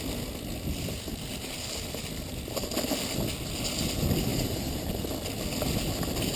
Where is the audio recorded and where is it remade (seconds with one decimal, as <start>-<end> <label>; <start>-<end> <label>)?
0.0-4.3 recorded; 4.3-4.9 remade; 4.9-6.4 recorded